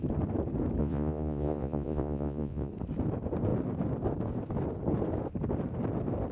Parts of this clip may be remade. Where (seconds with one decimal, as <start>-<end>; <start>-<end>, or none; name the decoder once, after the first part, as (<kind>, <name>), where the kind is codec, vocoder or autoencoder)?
0.8-2.7 (vocoder, Vocos)